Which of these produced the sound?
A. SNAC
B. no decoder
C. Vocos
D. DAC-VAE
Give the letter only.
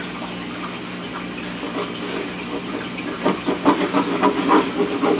B